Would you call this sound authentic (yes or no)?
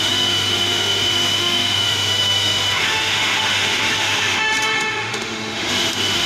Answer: no